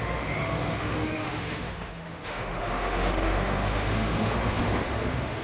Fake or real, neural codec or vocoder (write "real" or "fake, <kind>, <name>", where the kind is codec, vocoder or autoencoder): fake, autoencoder, DAC-VAE